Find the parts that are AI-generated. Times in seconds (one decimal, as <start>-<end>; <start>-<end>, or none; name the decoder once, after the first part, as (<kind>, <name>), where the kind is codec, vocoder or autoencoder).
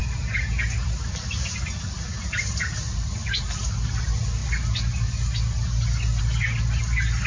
none